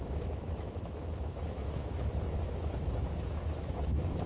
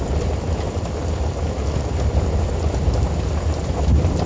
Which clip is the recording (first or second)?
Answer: second